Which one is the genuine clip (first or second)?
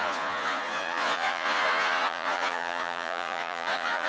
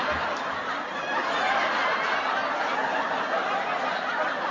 second